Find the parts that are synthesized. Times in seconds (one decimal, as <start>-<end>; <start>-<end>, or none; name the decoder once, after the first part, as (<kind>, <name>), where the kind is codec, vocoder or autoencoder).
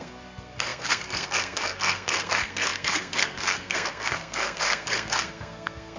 0.0-6.0 (codec, SNAC)